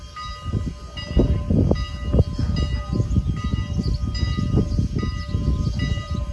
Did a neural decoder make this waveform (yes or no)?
no